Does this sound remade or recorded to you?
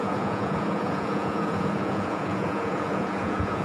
remade